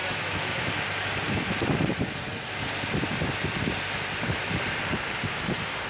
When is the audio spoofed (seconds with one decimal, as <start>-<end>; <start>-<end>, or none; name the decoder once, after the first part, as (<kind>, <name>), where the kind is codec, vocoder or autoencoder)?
0.0-0.7 (autoencoder, DAC-VAE)

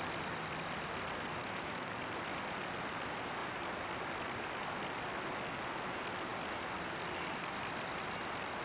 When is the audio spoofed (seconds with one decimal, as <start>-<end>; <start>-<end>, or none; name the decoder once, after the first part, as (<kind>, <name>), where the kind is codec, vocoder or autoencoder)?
1.4-2.0 (autoencoder, DAC-VAE)